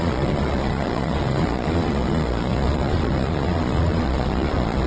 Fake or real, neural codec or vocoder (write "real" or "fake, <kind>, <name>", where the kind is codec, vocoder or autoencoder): fake, vocoder, Vocos